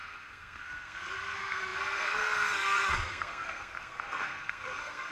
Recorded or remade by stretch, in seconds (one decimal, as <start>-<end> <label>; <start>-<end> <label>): 0.0-5.1 remade